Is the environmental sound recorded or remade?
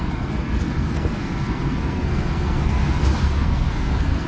remade